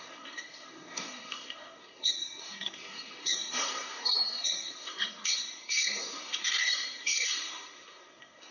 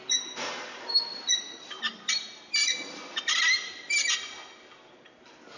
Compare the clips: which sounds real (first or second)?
second